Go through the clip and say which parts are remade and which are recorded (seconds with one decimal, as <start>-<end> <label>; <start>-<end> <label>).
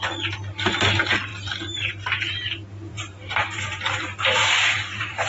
0.0-1.3 recorded; 1.3-1.9 remade; 1.9-2.9 recorded; 2.9-5.3 remade